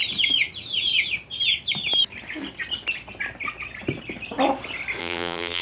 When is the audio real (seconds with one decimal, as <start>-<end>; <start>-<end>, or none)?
0.0-5.0